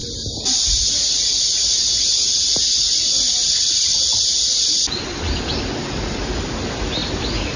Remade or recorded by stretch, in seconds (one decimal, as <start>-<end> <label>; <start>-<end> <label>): 0.0-7.6 recorded